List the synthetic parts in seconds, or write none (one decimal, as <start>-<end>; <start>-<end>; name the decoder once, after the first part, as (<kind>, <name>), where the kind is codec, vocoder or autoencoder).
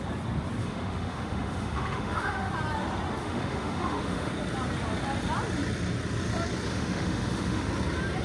0.6-2.5 (autoencoder, DAC-VAE); 3.2-4.3; 6.7-7.7